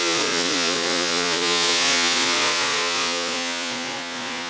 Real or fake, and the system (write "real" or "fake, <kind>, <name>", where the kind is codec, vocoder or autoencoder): fake, vocoder, Vocos